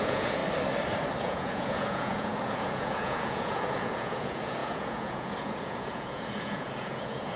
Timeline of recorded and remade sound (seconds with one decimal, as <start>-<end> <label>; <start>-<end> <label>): 0.0-0.4 remade; 0.4-1.2 recorded; 1.2-7.4 remade